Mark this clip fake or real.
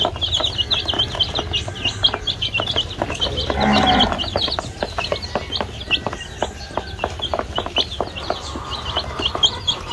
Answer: real